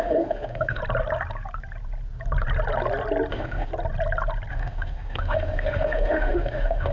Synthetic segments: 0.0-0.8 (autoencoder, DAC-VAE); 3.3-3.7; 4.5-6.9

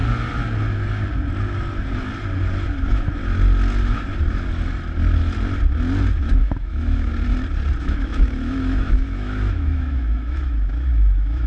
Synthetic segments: 2.8-3.2 (autoencoder, DAC-VAE); 6.2-7.1; 7.8-11.5

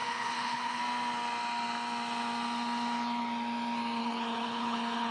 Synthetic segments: 0.0-0.8 (codec, HILCodec); 4.0-5.1

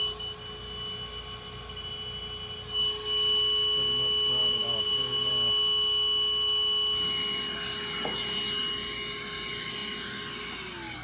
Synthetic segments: 4.4-5.3 (vocoder, Vocos)

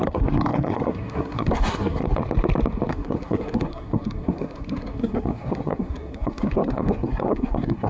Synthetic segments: 0.0-2.2 (codec, SNAC); 2.9-7.9

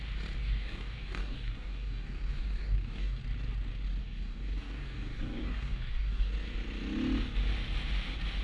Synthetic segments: 0.4-3.2 (codec, DAC); 4.0-6.3